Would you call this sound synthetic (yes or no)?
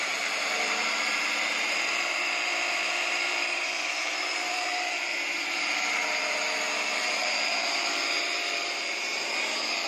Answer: yes